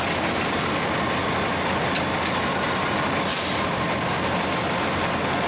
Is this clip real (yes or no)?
yes